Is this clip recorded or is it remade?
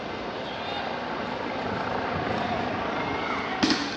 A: recorded